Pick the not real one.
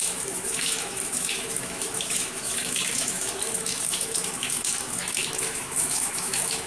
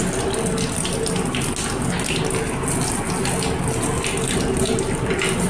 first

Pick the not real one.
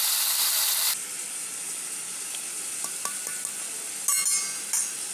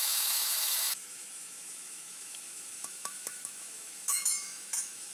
second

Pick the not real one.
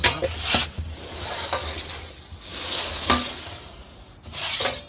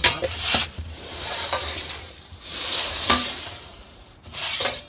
second